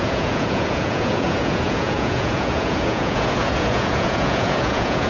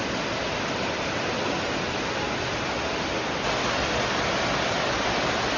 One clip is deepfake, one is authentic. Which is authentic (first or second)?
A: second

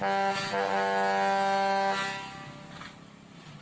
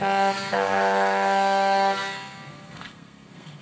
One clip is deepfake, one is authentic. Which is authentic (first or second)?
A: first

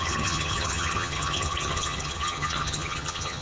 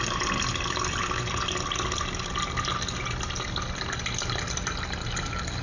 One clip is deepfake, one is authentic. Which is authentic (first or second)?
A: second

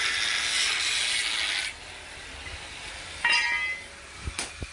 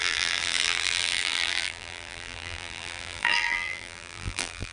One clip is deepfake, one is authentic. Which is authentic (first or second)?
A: first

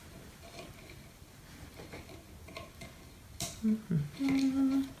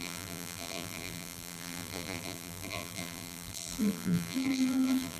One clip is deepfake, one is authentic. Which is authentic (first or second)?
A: first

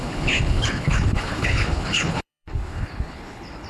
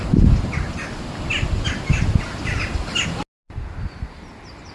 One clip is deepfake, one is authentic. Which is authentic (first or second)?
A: second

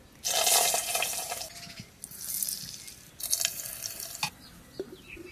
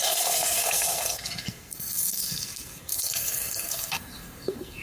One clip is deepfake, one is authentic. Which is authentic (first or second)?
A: first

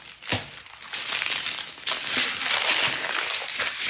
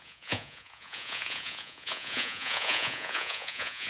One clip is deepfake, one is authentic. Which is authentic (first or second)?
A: first